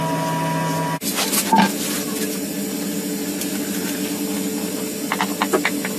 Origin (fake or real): real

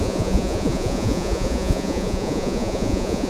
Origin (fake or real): fake